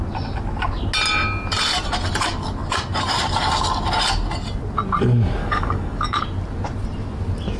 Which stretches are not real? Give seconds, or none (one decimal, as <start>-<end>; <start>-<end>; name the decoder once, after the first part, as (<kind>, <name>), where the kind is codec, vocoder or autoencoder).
5.4-6.2 (codec, DAC)